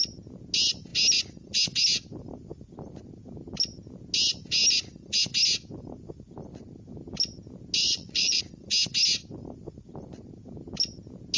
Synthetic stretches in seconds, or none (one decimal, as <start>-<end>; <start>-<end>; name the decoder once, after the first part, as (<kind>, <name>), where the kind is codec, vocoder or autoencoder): 7.8-8.4 (vocoder, Vocos)